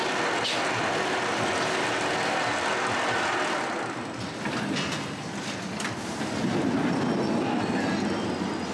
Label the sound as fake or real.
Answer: real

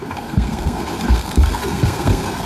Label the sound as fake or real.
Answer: fake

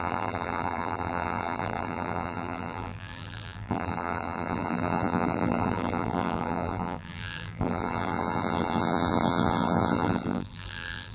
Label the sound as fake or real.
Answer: fake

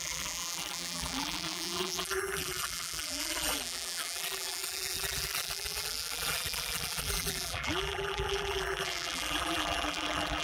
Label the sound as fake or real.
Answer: fake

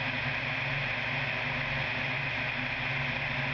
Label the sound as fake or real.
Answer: real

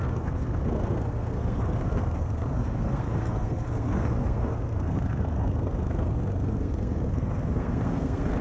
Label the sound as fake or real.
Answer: fake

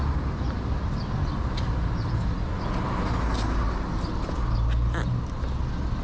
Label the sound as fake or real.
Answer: real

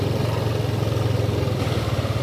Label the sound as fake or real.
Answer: real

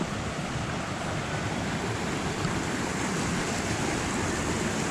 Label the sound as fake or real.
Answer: real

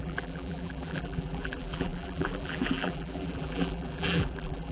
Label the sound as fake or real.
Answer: fake